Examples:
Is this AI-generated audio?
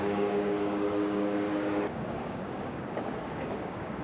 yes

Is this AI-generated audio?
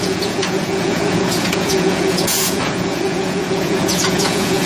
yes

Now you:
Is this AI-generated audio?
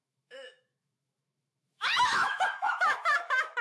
yes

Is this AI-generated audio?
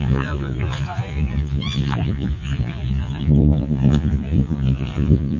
yes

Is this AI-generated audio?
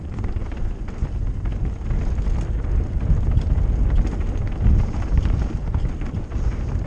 no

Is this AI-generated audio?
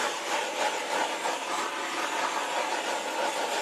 no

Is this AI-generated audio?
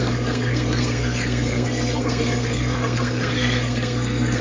yes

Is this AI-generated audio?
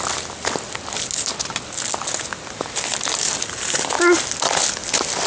no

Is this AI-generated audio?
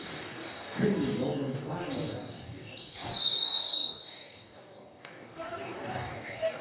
yes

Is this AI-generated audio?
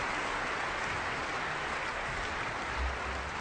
no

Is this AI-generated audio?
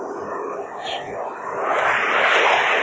no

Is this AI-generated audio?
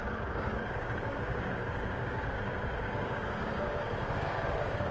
yes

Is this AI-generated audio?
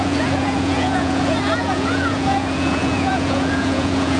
yes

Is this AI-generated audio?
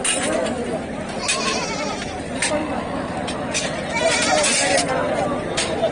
no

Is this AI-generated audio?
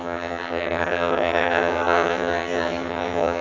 yes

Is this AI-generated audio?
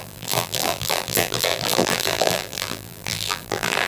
yes